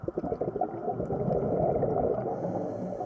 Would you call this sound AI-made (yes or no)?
no